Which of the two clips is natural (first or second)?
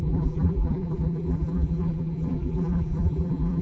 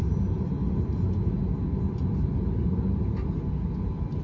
second